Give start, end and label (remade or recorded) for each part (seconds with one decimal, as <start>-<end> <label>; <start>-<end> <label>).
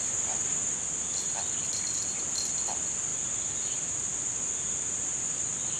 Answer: 0.0-5.8 recorded